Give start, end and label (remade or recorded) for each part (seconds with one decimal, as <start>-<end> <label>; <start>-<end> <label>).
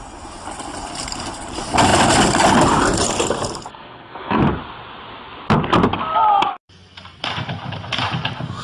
0.0-3.7 recorded; 3.7-4.4 remade; 4.4-8.6 recorded